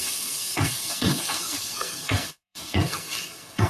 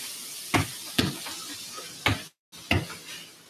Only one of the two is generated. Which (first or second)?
first